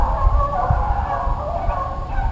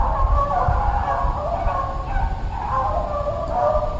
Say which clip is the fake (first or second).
first